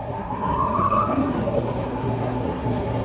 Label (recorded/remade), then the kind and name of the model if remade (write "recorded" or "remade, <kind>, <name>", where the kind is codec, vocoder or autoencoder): remade, codec, SNAC